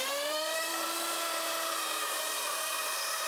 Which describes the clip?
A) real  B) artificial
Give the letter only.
B